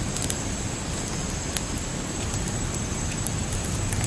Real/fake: real